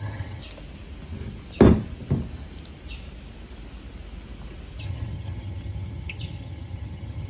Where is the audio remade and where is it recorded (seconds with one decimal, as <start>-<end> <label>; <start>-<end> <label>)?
0.0-0.4 remade; 0.4-4.8 recorded; 4.8-7.3 remade